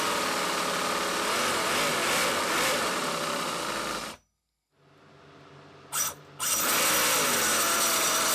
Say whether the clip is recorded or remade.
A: recorded